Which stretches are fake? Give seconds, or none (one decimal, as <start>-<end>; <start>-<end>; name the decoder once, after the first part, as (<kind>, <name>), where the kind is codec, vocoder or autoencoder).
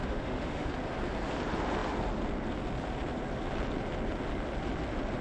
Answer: 0.0-0.7 (autoencoder, DAC-VAE)